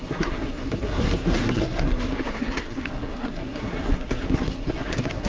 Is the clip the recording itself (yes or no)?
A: no